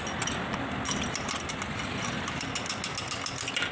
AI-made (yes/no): no